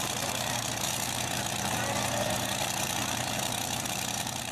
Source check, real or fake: fake